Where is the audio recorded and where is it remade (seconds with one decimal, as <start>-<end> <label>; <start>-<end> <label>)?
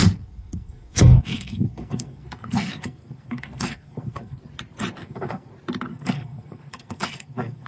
0.0-4.4 remade; 4.4-5.0 recorded; 5.0-5.5 remade; 5.5-5.9 recorded; 5.9-7.7 remade